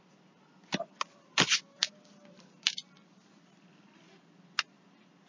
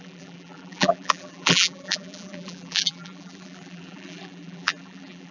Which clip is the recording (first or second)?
first